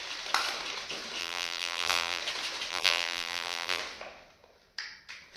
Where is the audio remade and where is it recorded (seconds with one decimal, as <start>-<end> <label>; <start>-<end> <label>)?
0.0-1.2 recorded; 1.2-2.2 remade; 2.2-2.7 recorded; 2.7-3.8 remade; 3.8-5.4 recorded